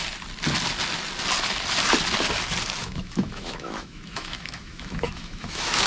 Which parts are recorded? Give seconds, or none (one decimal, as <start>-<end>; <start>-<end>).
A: 0.0-2.8